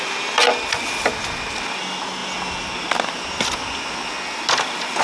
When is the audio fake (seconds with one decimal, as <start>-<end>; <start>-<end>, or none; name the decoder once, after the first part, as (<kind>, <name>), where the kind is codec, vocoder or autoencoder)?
none